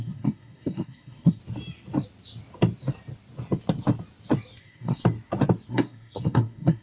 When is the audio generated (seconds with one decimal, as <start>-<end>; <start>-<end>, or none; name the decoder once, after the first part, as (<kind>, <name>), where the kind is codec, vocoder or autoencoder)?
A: 0.0-1.4 (codec, SNAC); 4.6-5.0; 5.7-6.8